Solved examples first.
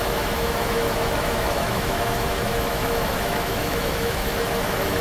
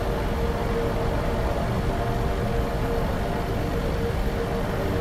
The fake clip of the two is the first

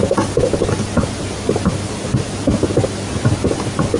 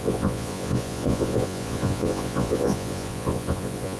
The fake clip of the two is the second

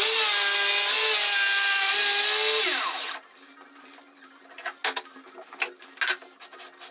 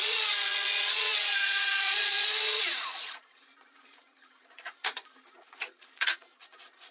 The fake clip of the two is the second